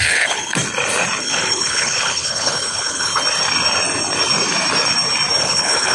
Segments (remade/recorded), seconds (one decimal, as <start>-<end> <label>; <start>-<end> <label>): 0.0-0.5 remade; 0.5-1.2 recorded; 1.2-3.1 remade; 3.1-5.4 recorded; 5.4-5.9 remade